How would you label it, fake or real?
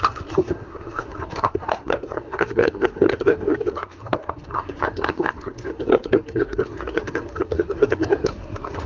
fake